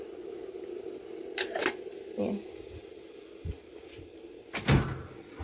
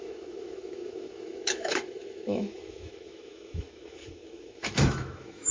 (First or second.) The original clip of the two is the first